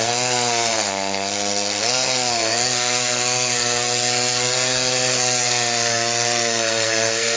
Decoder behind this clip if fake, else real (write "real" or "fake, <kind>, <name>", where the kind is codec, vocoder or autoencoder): fake, codec, SNAC